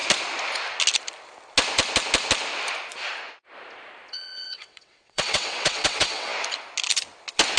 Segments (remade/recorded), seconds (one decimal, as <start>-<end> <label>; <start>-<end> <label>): 0.0-4.1 recorded; 4.1-6.3 remade; 6.3-7.6 recorded